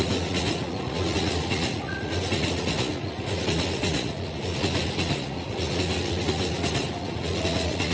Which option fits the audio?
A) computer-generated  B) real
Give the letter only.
A